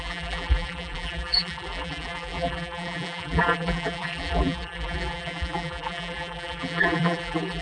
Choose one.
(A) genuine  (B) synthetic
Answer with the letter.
B